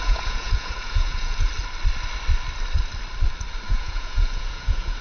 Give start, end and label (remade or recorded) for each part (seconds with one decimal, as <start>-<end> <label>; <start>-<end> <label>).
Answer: 0.0-1.5 remade; 1.5-3.7 recorded; 3.7-5.0 remade

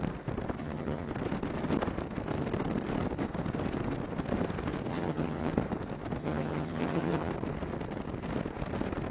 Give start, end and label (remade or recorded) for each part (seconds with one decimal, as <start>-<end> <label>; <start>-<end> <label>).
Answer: 0.0-0.6 recorded; 0.6-1.1 remade; 1.1-4.9 recorded; 4.9-5.5 remade; 5.5-6.2 recorded; 6.2-7.3 remade; 7.3-9.1 recorded